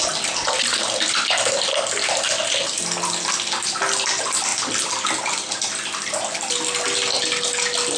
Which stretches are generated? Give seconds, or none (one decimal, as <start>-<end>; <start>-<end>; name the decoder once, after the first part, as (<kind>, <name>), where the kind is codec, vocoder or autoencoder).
none

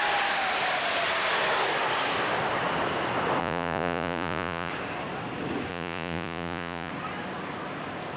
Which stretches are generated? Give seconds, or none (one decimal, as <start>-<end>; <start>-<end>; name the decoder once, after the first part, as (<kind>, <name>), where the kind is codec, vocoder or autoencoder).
3.4-4.7 (vocoder, Vocos); 5.7-6.9

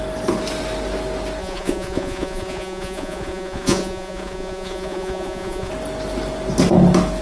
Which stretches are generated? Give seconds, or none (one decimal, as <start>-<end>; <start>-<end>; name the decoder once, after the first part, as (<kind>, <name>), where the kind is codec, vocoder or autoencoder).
1.4-5.7 (vocoder, Vocos)

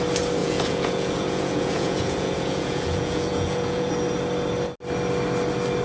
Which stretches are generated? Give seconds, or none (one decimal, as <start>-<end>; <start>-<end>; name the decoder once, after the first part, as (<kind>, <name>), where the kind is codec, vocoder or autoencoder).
0.4-3.9 (vocoder, Vocos)

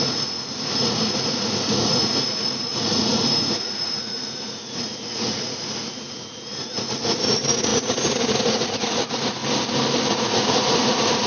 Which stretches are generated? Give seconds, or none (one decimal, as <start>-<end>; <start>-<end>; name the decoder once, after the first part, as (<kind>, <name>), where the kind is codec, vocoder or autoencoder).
0.0-9.4 (vocoder, Vocos); 10.1-11.3

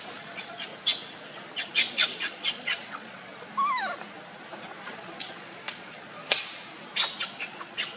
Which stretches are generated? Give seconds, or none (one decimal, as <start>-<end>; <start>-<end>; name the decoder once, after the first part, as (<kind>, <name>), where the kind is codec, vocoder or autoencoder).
0.0-0.7 (vocoder, Vocos); 1.7-3.3; 4.8-6.2; 7.2-8.0